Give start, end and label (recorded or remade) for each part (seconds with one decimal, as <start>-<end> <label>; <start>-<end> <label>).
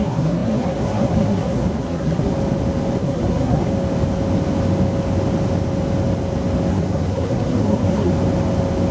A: 0.0-2.3 remade; 2.3-3.0 recorded; 3.0-3.7 remade; 3.7-6.7 recorded; 6.7-8.1 remade; 8.1-8.9 recorded